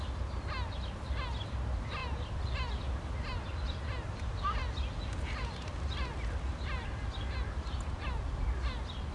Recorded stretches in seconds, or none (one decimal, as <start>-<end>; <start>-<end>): 0.0-9.1